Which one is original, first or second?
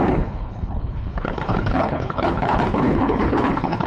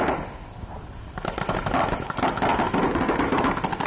second